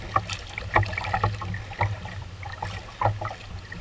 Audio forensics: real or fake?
real